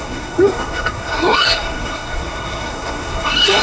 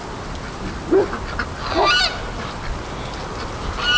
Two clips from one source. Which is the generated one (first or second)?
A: first